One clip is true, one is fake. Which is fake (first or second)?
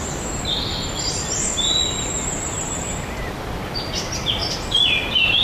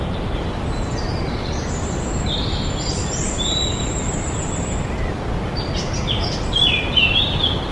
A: second